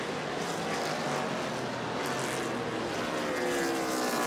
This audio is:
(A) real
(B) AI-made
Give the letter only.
A